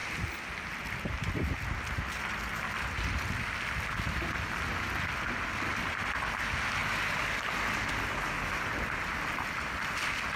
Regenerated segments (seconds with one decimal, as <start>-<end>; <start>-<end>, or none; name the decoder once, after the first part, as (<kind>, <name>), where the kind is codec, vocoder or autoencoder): none